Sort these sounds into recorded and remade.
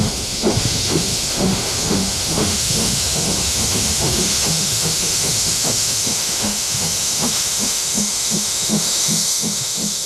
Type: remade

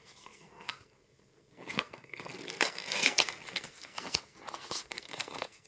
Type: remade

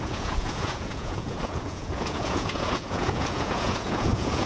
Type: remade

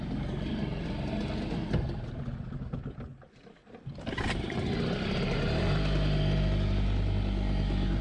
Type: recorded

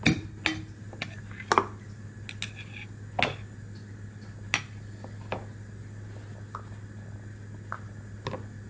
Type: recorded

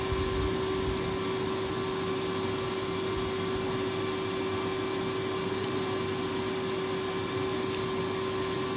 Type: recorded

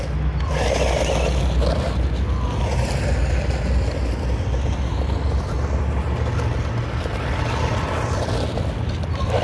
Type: recorded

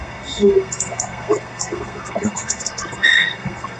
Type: remade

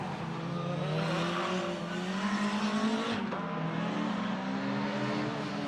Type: recorded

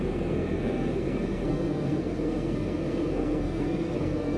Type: remade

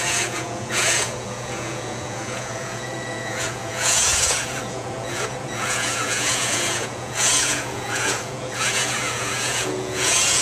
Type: remade